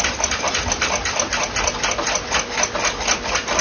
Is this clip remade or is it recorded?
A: recorded